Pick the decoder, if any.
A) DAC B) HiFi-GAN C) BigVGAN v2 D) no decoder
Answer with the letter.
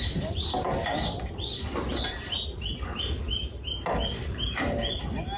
D